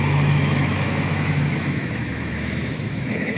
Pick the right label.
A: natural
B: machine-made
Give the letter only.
B